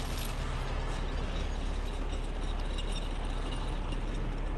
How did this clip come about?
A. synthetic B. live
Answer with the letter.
B